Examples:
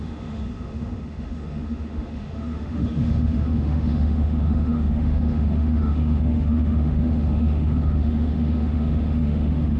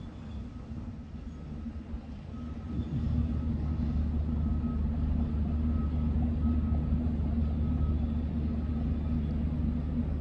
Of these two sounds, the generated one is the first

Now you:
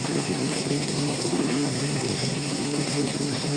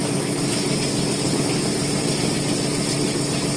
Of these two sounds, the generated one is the first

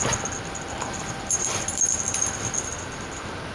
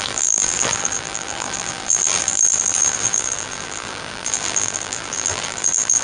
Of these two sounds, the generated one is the second